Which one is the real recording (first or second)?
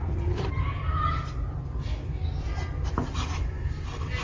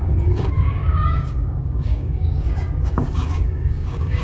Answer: first